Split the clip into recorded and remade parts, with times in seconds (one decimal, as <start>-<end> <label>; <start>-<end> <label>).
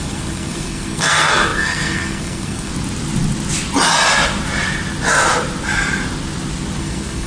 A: 0.0-2.7 remade; 2.7-6.8 recorded; 6.8-7.3 remade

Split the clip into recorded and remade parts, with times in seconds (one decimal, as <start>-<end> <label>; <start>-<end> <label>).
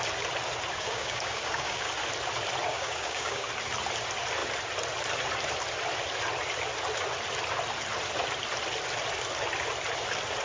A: 0.0-0.7 recorded; 0.7-1.9 remade; 1.9-2.7 recorded; 2.7-3.5 remade; 3.5-10.4 recorded